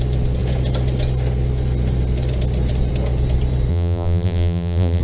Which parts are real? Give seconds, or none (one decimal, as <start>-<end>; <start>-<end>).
0.0-3.7